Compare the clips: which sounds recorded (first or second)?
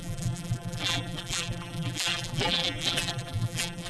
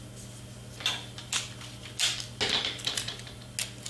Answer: second